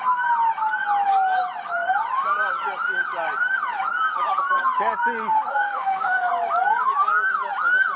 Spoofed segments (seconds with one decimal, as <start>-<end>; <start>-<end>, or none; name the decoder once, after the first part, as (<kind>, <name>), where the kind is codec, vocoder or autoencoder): 5.5-6.3 (autoencoder, DAC-VAE)